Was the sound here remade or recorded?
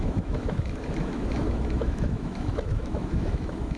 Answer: remade